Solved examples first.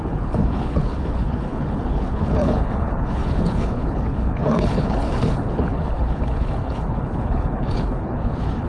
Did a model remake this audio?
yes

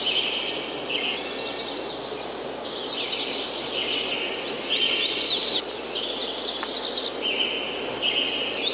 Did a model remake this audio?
no